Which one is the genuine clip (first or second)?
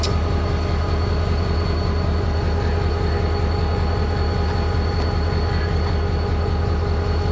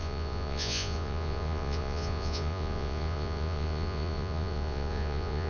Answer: first